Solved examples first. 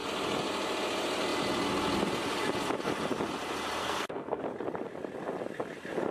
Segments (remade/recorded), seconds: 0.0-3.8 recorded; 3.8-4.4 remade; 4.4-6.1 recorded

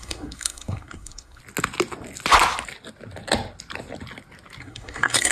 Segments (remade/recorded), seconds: 0.0-1.4 remade; 1.4-4.6 recorded; 4.6-5.3 remade